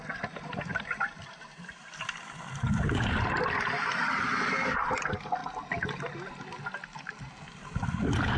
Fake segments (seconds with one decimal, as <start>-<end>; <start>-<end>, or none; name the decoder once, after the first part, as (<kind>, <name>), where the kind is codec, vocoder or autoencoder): none